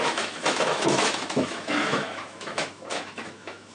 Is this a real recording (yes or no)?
no